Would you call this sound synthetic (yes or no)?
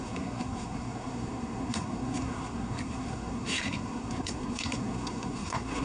yes